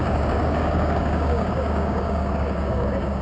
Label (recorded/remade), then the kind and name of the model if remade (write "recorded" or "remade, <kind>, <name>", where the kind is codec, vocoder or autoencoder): remade, codec, DAC